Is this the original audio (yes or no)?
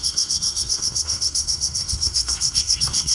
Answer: no